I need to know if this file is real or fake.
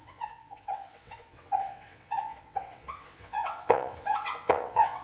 fake